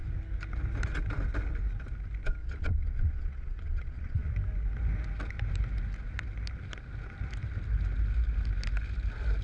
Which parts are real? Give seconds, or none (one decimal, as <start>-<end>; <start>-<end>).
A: 0.0-2.4; 4.3-9.4